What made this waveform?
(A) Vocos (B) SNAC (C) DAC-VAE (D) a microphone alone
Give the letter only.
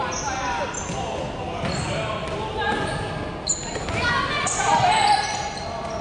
D